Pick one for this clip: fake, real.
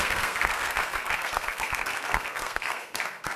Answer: fake